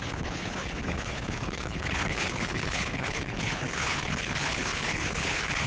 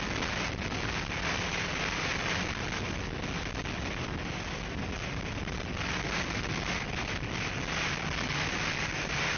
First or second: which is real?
second